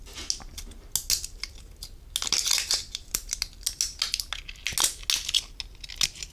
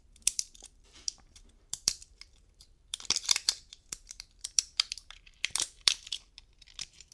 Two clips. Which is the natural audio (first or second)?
first